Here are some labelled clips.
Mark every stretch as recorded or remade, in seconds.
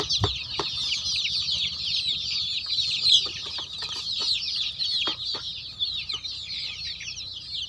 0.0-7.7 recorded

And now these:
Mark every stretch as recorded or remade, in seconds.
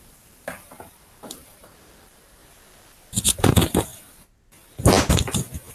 0.0-2.4 remade; 2.4-3.3 recorded; 3.3-3.9 remade; 3.9-5.7 recorded